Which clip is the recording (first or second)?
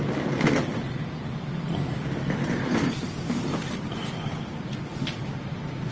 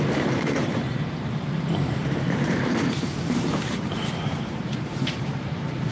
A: first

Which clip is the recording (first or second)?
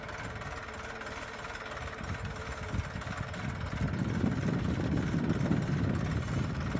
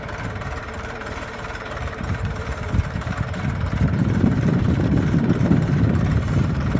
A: first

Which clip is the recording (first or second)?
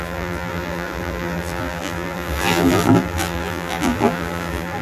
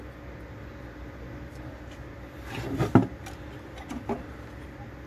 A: second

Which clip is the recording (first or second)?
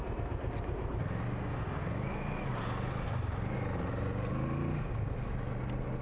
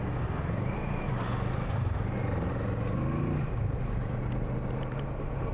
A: first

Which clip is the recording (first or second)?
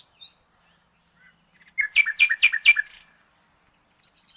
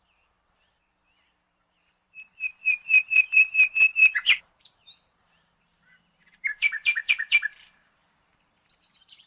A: first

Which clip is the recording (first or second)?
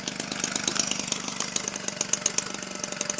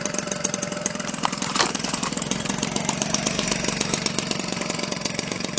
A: first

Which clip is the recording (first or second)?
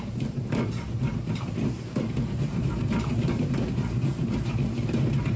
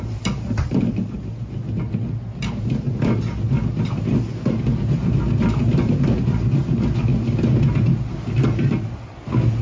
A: second